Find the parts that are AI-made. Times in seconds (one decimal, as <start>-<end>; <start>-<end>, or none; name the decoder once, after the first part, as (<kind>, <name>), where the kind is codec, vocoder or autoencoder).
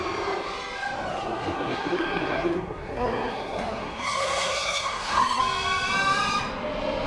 1.1-5.4 (codec, SNAC)